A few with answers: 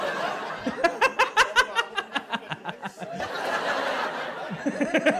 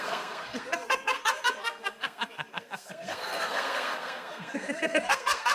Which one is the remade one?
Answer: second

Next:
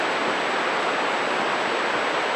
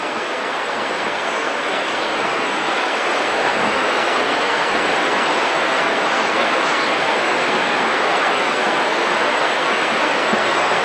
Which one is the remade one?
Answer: second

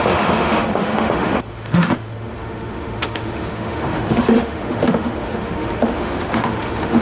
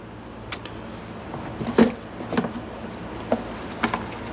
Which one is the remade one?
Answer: first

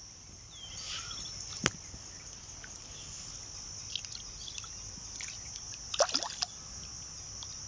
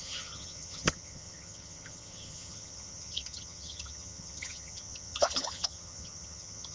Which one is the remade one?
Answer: second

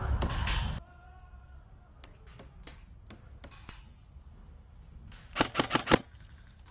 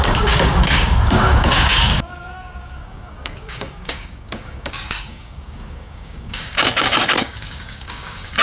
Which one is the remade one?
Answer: second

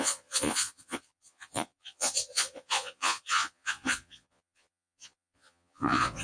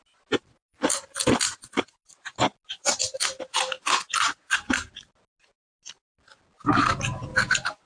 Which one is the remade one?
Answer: first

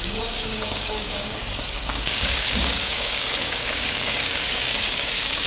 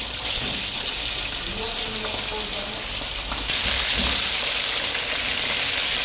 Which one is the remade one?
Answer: first